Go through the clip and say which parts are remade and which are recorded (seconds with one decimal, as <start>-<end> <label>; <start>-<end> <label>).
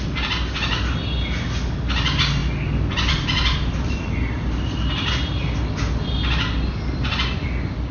0.0-7.9 recorded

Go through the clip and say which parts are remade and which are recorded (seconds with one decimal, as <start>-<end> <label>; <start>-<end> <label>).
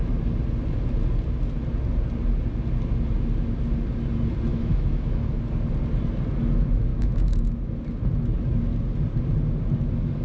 0.0-4.5 recorded; 4.5-5.4 remade; 5.4-6.9 recorded; 6.9-7.7 remade; 7.7-10.2 recorded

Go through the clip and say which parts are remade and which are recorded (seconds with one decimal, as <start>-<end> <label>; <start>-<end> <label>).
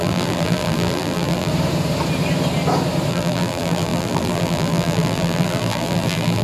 0.0-1.5 remade; 1.5-3.1 recorded; 3.1-6.4 remade